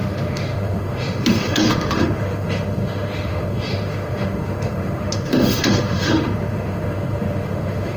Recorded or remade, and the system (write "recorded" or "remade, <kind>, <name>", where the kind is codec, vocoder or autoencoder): remade, autoencoder, DAC-VAE